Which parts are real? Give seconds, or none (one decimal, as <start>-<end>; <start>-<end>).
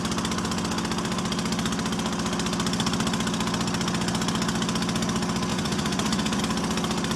0.0-5.5; 6.4-7.2